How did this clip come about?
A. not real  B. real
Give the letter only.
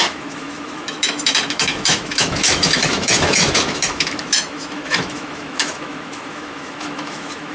A